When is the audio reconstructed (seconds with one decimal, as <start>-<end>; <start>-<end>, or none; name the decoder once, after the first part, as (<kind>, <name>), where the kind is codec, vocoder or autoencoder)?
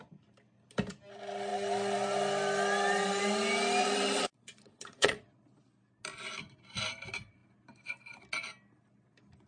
3.8-5.2 (vocoder, Vocos)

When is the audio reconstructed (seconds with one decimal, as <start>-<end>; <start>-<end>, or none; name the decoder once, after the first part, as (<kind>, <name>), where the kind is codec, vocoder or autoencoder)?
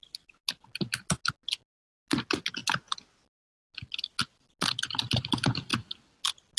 none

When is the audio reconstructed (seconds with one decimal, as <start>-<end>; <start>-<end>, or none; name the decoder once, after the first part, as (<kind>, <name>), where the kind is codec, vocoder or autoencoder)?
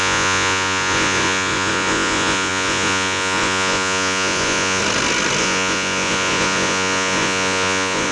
0.0-4.8 (vocoder, Vocos); 5.4-8.1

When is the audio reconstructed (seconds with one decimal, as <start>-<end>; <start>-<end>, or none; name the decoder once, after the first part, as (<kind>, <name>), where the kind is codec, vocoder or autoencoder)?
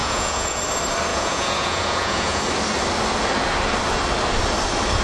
0.0-0.6 (vocoder, Vocos); 1.1-2.4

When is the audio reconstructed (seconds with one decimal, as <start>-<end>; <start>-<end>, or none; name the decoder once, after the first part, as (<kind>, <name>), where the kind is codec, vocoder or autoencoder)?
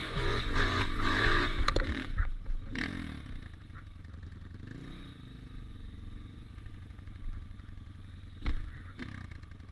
0.0-2.3 (vocoder, Vocos); 4.8-9.0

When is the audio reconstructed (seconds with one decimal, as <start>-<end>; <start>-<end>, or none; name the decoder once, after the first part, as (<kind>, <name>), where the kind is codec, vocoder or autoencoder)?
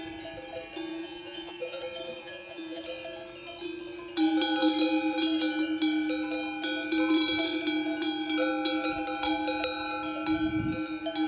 0.9-1.8 (vocoder, Vocos); 2.2-2.8